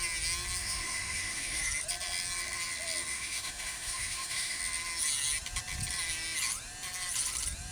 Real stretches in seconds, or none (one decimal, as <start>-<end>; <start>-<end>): 0.0-0.6; 1.6-3.1; 4.6-7.7